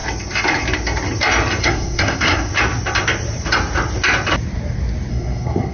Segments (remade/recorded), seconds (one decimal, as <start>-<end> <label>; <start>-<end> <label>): 0.0-1.6 recorded; 1.6-2.5 remade; 2.5-5.1 recorded; 5.1-5.7 remade